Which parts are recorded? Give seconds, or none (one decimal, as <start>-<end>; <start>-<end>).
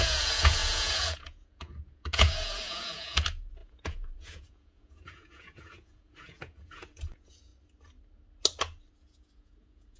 7.5-8.9